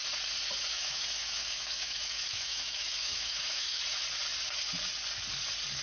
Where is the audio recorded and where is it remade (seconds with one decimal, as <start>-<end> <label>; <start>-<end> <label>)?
0.0-0.7 recorded; 0.7-3.8 remade; 3.8-5.8 recorded